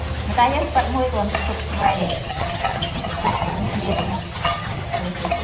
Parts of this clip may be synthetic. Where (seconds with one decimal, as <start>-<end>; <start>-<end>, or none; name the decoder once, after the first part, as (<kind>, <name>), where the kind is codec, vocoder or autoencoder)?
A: 1.8-5.0 (vocoder, HiFi-GAN)